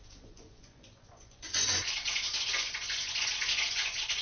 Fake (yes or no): yes